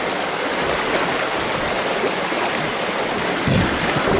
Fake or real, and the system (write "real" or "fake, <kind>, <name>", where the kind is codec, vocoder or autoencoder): real